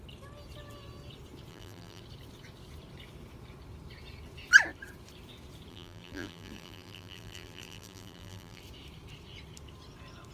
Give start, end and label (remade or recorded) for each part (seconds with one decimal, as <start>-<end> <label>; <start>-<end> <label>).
0.0-1.5 recorded; 1.5-2.0 remade; 2.0-5.7 recorded; 5.7-8.6 remade; 8.6-10.3 recorded